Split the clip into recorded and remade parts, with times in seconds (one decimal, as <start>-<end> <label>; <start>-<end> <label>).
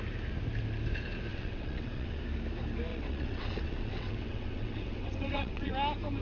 0.0-1.3 recorded; 1.3-2.2 remade; 2.2-2.9 recorded; 2.9-5.7 remade; 5.7-6.2 recorded